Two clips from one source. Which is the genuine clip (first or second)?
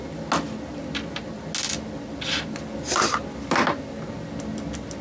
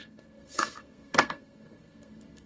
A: first